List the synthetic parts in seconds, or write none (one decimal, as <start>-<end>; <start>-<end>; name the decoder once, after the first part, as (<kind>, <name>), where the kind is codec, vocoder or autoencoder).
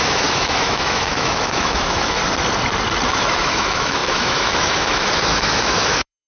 0.0-2.2 (autoencoder, DAC-VAE); 3.1-6.3